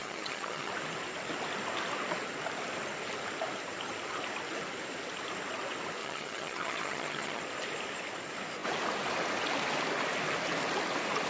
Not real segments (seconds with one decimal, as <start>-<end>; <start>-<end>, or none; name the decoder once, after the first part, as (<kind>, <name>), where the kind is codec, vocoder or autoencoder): 0.0-0.7 (vocoder, HiFi-GAN); 6.0-7.4